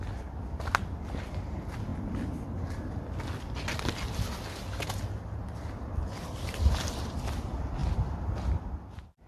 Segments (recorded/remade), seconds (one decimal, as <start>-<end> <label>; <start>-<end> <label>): 0.0-9.3 recorded